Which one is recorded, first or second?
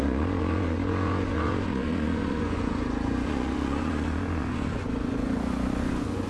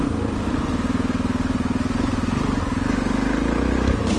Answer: second